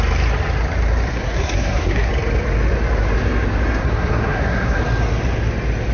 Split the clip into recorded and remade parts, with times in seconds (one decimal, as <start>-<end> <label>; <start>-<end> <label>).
0.0-1.1 recorded; 1.1-2.1 remade; 2.1-3.8 recorded; 3.8-4.8 remade; 4.8-5.9 recorded